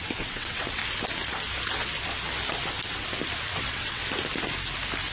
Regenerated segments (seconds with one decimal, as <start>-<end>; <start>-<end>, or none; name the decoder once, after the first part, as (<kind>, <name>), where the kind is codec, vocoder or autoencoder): 0.0-0.8 (vocoder, WaveNeXt); 3.5-4.0